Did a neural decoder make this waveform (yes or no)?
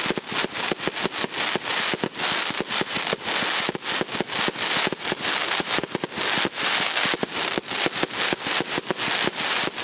no